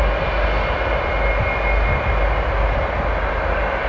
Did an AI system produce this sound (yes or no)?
no